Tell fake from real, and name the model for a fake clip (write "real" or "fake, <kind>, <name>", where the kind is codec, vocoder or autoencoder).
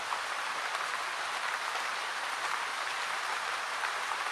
real